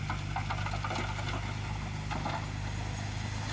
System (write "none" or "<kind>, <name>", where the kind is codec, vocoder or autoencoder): none